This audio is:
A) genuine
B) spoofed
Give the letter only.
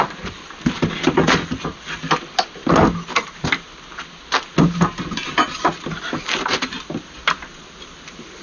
A